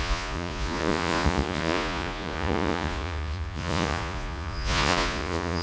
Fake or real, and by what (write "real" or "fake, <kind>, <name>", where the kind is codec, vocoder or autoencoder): fake, vocoder, Vocos